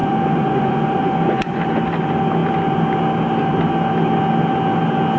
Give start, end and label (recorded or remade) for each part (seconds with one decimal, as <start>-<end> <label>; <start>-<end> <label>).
0.0-1.6 remade; 1.6-5.2 recorded